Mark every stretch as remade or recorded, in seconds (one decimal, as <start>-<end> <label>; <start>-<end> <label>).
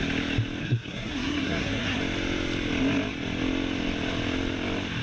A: 0.0-0.6 recorded; 0.6-2.0 remade; 2.0-5.0 recorded